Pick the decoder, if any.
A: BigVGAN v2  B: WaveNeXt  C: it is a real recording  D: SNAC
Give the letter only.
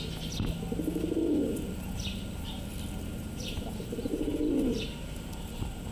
C